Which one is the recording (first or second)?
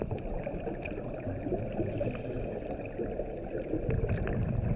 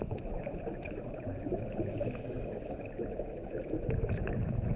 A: first